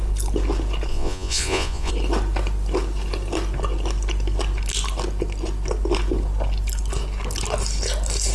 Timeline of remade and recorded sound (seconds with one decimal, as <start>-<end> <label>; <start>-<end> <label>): 0.0-0.9 recorded; 0.9-1.9 remade; 1.9-8.3 recorded